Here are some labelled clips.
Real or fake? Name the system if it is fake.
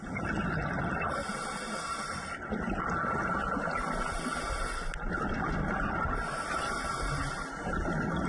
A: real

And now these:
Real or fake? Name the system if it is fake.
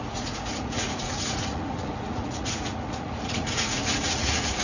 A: fake, vocoder, Vocos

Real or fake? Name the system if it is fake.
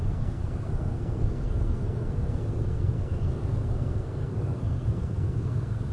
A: fake, codec, SNAC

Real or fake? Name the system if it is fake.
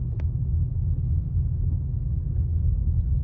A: real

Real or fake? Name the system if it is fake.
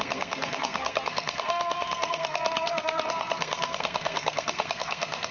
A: fake, codec, SNAC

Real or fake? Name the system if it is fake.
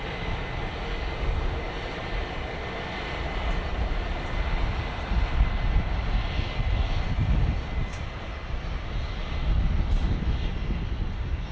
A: real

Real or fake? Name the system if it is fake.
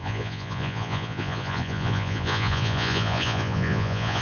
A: fake, vocoder, Vocos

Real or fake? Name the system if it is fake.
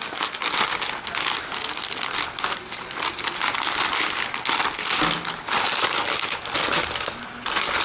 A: real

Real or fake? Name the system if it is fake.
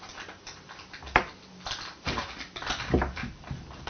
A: real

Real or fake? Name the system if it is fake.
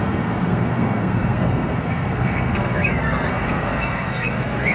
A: fake, codec, SNAC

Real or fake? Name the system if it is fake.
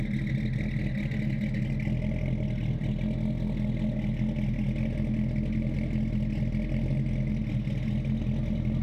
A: real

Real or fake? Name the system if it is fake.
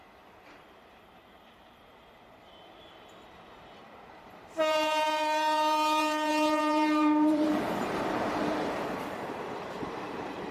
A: fake, vocoder, BigVGAN v2